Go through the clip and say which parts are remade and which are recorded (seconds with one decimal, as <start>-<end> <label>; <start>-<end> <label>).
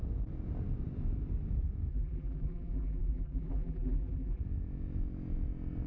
0.0-1.9 recorded; 1.9-4.4 remade; 4.4-5.9 recorded